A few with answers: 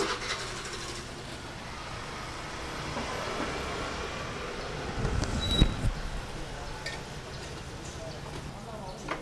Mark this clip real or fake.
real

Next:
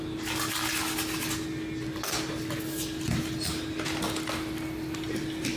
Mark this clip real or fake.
real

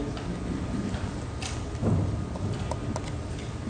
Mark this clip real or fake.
real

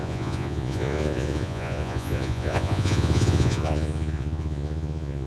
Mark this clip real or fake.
fake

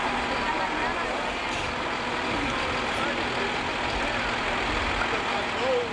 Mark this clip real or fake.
real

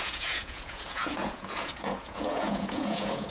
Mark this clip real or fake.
fake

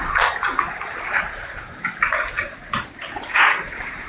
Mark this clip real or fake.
real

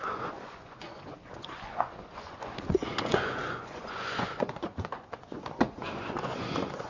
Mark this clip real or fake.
fake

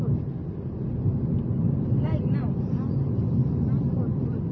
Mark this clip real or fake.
real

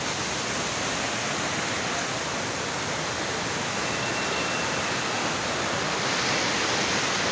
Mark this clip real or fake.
real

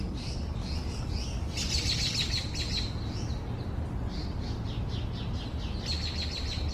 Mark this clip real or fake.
real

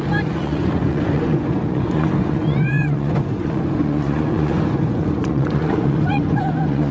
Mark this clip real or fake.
fake